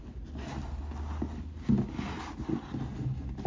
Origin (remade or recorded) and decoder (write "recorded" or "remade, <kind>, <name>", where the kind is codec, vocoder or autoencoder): recorded